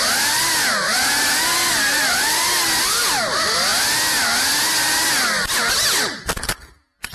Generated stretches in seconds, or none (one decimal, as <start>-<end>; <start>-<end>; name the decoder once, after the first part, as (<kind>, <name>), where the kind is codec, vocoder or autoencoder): none